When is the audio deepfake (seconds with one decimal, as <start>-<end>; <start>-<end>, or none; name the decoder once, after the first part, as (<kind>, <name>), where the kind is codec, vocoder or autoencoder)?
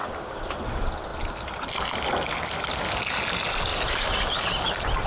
0.0-0.6 (vocoder, BigVGAN v2); 3.7-5.1